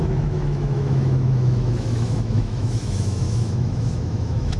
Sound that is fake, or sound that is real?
fake